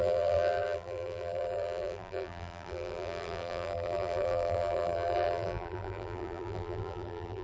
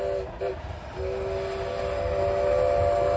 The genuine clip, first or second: second